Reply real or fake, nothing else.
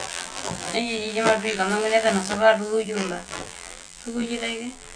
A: fake